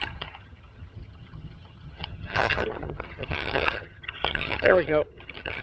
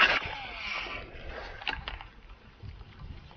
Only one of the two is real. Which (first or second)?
second